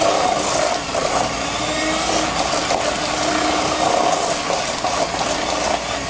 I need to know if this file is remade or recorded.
recorded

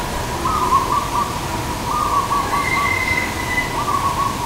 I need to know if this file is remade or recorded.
recorded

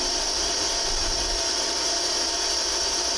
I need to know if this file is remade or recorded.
recorded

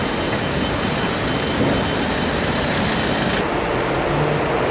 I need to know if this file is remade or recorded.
recorded